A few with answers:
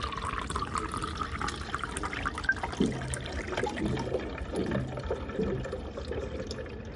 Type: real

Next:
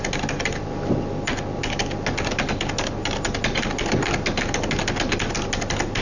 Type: real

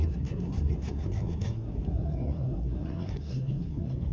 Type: fake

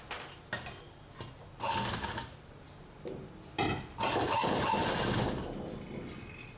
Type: real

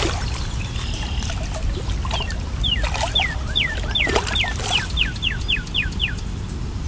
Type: real